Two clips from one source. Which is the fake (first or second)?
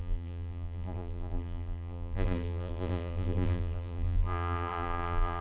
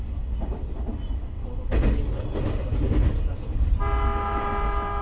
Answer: first